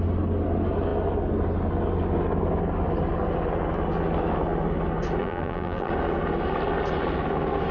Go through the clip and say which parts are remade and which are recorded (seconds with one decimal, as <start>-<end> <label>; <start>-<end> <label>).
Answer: 0.0-5.2 recorded; 5.2-5.9 remade; 5.9-7.7 recorded